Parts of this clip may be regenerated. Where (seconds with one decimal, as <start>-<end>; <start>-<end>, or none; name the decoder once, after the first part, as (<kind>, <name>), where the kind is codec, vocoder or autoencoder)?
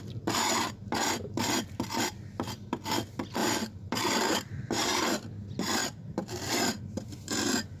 3.4-5.0 (vocoder, BigVGAN v2); 5.8-6.8